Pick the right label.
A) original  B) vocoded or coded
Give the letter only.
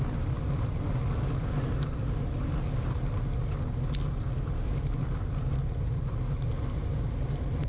A